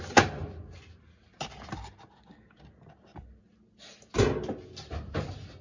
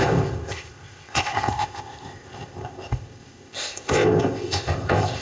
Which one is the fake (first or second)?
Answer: second